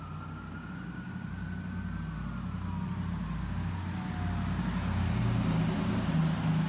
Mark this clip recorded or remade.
recorded